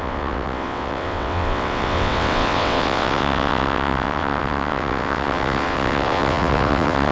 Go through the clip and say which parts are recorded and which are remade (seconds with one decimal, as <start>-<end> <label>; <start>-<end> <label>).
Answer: 0.0-7.1 remade